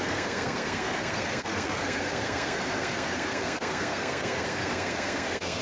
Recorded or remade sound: remade